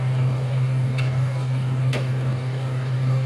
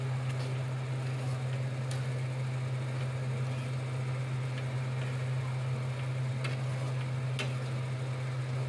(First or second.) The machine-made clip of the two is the first